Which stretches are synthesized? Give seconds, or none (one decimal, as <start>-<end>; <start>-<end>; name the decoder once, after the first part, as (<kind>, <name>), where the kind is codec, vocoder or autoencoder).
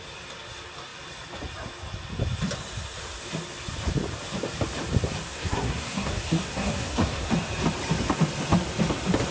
5.3-7.3 (codec, SNAC)